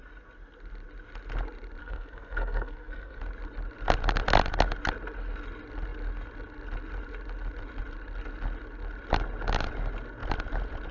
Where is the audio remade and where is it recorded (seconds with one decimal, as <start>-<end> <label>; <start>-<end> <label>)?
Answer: 0.0-1.8 recorded; 1.8-3.2 remade; 3.2-10.9 recorded

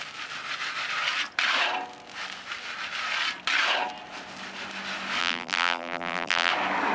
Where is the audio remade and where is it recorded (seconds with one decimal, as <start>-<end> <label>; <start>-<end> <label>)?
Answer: 0.0-5.2 recorded; 5.2-6.5 remade; 6.5-6.9 recorded

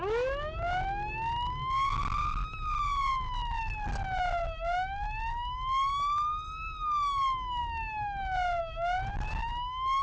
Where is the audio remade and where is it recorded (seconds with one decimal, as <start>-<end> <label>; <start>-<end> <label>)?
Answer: 0.0-10.0 recorded

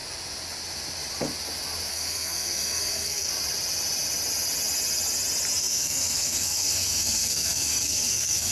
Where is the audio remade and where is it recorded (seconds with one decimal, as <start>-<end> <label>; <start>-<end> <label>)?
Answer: 0.0-1.9 recorded; 1.9-3.3 remade; 3.3-5.6 recorded; 5.6-8.5 remade

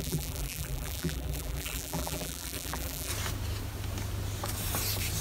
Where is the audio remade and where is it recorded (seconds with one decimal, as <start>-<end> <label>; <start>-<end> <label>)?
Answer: 0.0-3.1 remade; 3.1-5.2 recorded

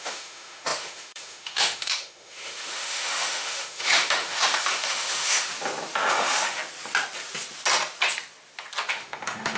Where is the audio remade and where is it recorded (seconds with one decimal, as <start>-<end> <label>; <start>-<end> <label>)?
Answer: 0.0-5.5 remade; 5.5-6.1 recorded; 6.1-6.6 remade; 6.6-8.9 recorded; 8.9-9.6 remade

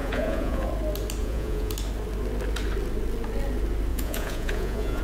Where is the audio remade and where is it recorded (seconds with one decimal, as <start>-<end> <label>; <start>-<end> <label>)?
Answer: 0.0-0.7 remade; 0.7-1.2 recorded; 1.2-1.7 remade; 1.7-3.9 recorded; 3.9-5.0 remade